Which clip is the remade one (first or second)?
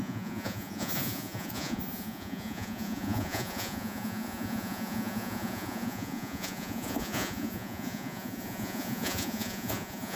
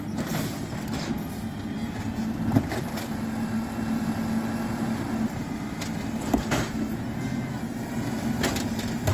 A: first